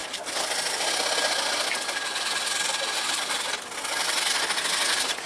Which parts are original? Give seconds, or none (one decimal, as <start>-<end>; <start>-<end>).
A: 0.0-5.3